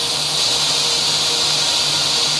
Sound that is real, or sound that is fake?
real